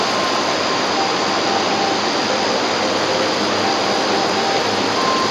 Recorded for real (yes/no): yes